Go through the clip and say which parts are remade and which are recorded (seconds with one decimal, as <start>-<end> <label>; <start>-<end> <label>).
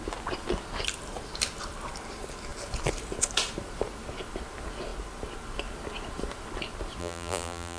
0.0-7.0 recorded; 7.0-7.8 remade